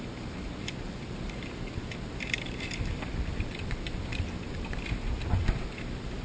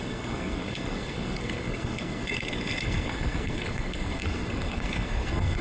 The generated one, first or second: second